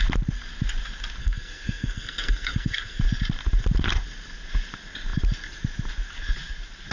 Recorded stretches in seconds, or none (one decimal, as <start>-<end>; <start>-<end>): 0.0-1.2; 3.0-6.9